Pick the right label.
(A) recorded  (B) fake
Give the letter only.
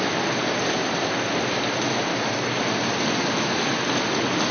A